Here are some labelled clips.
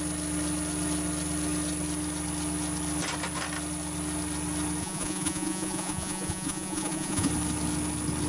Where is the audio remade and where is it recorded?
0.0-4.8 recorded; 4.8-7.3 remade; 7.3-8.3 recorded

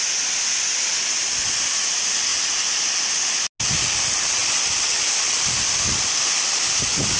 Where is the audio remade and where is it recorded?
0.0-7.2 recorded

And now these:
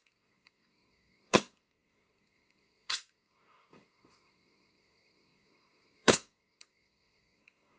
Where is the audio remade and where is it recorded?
0.0-7.8 remade

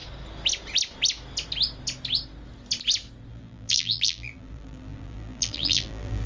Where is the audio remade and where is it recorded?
0.0-3.3 recorded; 3.3-6.3 remade

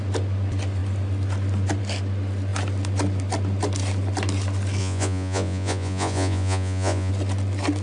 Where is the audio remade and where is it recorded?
0.0-4.8 recorded; 4.8-7.1 remade; 7.1-7.8 recorded

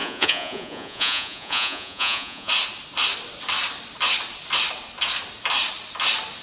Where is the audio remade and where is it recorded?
0.0-2.5 remade; 2.5-6.4 recorded